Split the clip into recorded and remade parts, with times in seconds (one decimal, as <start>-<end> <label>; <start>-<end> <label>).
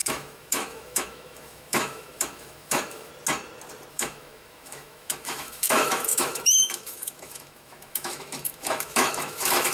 0.0-3.1 remade; 3.1-3.9 recorded; 3.9-9.7 remade